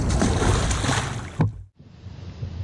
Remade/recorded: recorded